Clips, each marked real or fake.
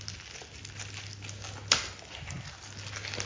real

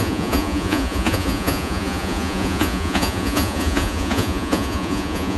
fake